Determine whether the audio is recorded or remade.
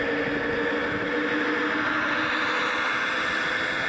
recorded